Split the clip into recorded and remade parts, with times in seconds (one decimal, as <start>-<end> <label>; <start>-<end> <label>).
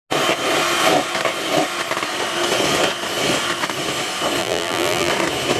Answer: 0.0-4.4 recorded; 4.4-5.1 remade; 5.1-5.6 recorded